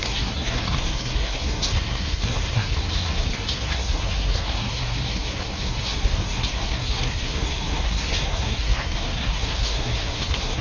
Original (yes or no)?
no